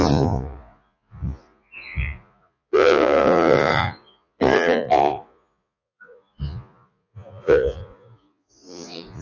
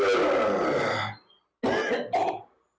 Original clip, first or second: second